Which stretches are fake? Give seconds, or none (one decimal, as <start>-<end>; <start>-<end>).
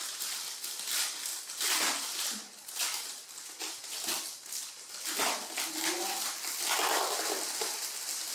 none